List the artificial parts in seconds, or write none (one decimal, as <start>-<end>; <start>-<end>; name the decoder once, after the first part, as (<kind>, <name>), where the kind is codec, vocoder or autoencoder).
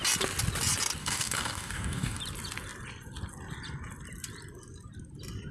1.0-2.2 (codec, DAC)